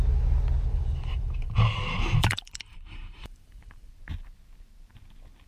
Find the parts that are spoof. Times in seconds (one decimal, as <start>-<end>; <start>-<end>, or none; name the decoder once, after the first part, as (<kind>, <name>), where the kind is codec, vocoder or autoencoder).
0.7-3.9 (vocoder, BigVGAN v2)